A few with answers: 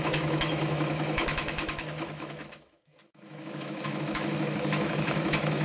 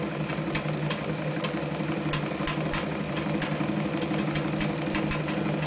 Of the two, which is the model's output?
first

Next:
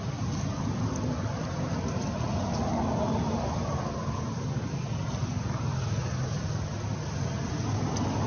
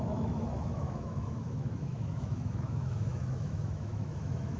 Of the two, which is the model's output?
second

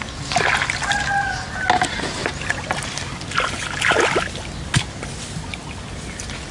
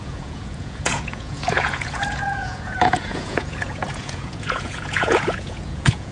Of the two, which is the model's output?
second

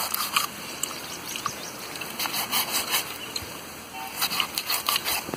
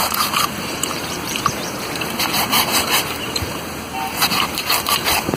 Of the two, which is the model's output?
second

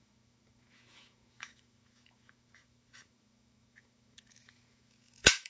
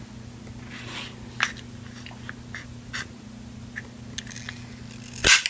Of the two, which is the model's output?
first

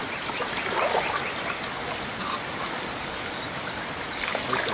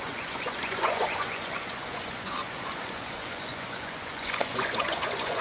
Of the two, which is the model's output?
second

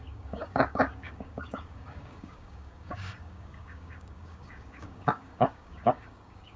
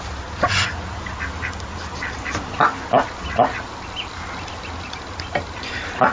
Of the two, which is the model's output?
first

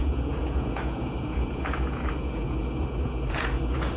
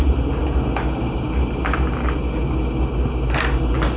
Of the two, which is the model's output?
first